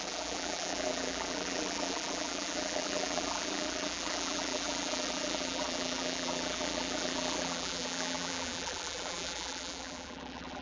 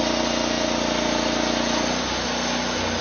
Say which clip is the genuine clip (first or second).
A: second